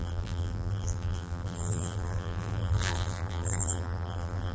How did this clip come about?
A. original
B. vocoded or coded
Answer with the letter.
B